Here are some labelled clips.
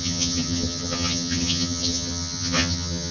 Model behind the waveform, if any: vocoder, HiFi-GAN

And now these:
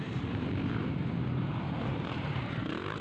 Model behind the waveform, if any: vocoder, BigVGAN v2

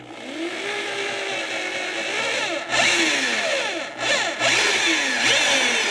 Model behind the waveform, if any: none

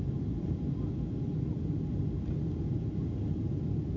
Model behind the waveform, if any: none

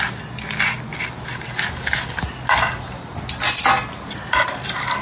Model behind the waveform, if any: none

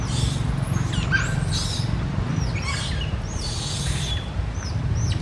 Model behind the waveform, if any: none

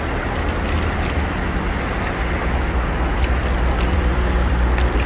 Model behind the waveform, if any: none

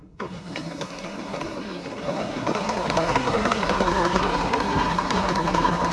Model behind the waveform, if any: codec, SNAC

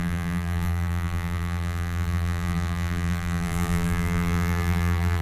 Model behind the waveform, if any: vocoder, BigVGAN v2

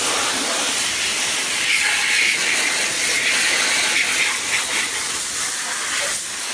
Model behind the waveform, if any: none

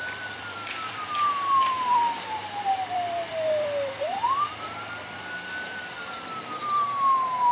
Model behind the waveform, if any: vocoder, BigVGAN v2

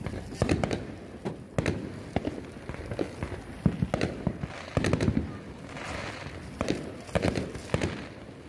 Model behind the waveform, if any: none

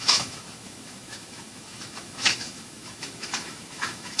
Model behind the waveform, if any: autoencoder, DAC-VAE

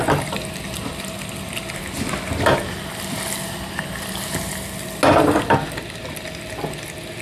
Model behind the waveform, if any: none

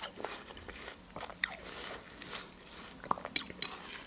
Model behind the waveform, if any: none